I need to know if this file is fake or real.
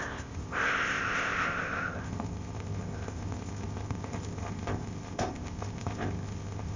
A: fake